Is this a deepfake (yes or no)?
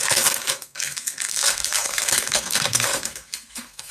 yes